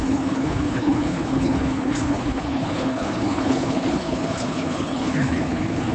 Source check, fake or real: fake